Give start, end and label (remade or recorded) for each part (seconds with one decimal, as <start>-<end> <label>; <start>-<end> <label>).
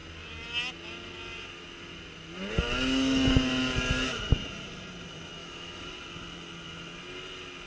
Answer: 0.0-5.4 recorded; 5.4-5.9 remade; 5.9-7.7 recorded